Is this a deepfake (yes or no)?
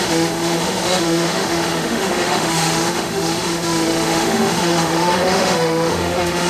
yes